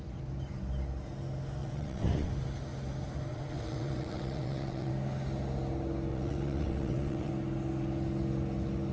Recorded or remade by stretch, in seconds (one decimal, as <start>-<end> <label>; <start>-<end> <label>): 0.0-1.6 recorded; 1.6-2.3 remade; 2.3-3.3 recorded; 3.3-4.9 remade; 4.9-6.1 recorded; 6.1-7.3 remade; 7.3-8.9 recorded